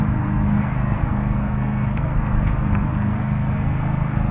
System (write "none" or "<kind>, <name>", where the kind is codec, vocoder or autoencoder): codec, SNAC